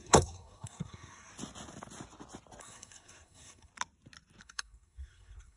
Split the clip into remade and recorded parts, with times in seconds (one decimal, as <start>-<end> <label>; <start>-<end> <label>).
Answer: 0.0-1.3 remade; 1.3-2.6 recorded; 2.6-3.7 remade; 3.7-4.4 recorded; 4.4-5.6 remade